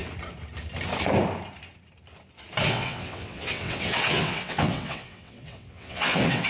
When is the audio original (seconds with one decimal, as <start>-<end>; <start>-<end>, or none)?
0.0-2.7